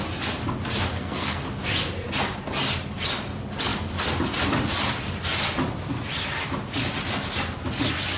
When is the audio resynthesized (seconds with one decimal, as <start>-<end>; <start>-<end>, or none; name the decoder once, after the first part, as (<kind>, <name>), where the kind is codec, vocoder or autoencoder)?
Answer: 0.9-1.4 (codec, SNAC)